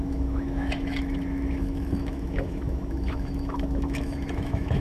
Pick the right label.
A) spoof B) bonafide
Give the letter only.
A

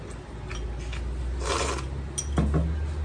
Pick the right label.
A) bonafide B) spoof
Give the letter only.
A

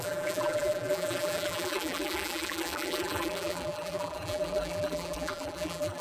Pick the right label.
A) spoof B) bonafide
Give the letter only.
A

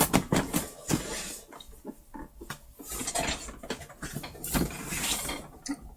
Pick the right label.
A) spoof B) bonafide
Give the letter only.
B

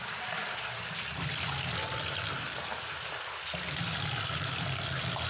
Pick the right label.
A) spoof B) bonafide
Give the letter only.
B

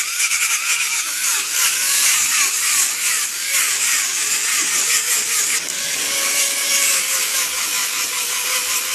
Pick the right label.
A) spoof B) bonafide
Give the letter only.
A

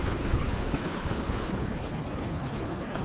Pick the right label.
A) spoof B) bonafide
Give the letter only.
A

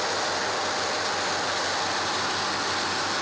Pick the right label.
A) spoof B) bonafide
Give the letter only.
B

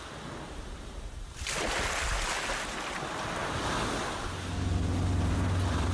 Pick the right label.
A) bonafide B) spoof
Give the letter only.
A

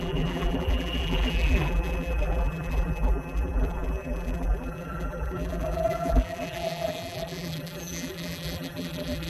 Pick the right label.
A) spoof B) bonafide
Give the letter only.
A